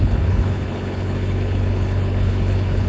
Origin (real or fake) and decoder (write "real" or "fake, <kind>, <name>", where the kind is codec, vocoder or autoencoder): fake, codec, HILCodec